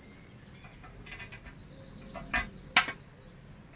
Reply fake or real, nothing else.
real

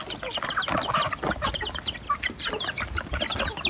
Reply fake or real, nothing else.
real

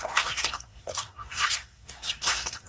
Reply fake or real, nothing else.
fake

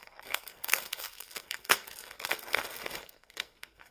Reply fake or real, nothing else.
fake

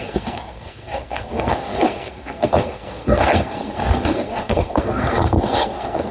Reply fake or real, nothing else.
fake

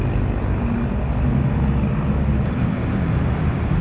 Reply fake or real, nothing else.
real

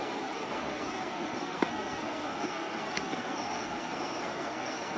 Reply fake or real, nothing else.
fake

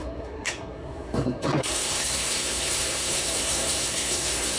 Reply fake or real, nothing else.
fake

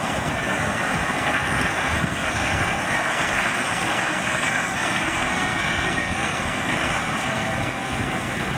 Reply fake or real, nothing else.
fake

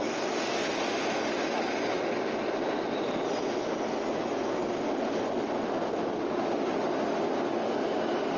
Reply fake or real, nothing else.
real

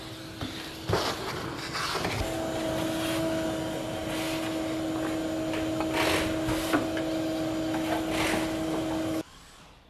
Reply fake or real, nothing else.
real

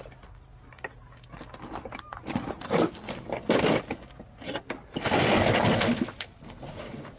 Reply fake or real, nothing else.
real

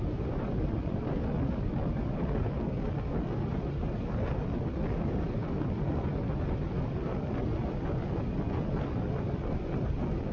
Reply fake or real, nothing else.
real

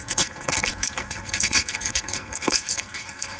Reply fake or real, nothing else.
fake